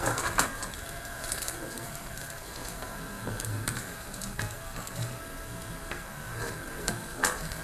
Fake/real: fake